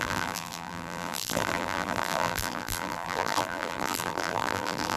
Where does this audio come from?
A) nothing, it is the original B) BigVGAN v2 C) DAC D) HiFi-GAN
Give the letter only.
B